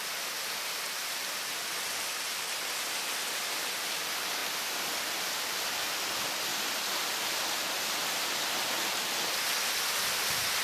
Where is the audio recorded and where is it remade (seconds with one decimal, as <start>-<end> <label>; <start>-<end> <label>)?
0.0-6.5 recorded; 6.5-8.3 remade; 8.3-10.6 recorded

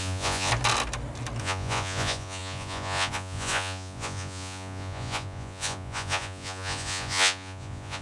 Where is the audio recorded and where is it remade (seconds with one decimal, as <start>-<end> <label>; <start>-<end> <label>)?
0.0-0.5 remade; 0.5-1.4 recorded; 1.4-8.0 remade

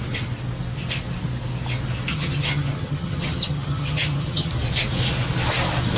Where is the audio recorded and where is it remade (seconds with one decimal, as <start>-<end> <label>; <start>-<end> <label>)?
0.0-2.1 recorded; 2.1-4.5 remade; 4.5-6.0 recorded

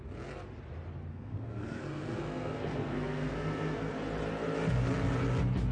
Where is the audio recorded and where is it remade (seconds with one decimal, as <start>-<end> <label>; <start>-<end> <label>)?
0.0-1.1 recorded; 1.1-3.9 remade; 3.9-5.7 recorded

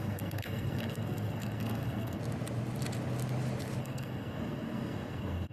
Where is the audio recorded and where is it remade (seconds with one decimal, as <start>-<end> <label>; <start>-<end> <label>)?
0.0-2.2 remade; 2.2-3.8 recorded; 3.8-5.5 remade

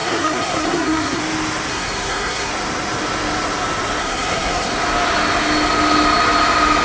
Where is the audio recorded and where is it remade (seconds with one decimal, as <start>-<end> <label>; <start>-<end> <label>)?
0.0-1.2 remade; 1.2-1.7 recorded; 1.7-2.5 remade; 2.5-4.0 recorded; 4.0-4.7 remade; 4.7-6.8 recorded